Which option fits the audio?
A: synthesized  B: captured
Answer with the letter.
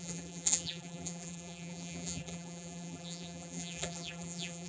A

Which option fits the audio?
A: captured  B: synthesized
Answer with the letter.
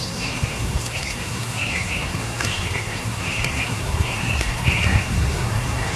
B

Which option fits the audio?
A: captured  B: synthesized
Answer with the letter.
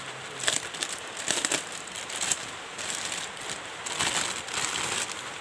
A